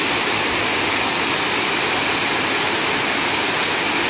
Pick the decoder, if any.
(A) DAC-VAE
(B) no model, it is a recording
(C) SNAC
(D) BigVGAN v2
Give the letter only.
B